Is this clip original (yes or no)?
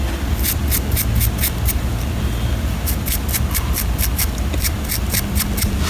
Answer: yes